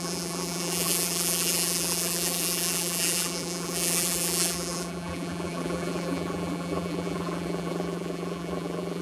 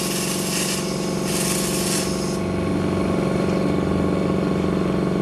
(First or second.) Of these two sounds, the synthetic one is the first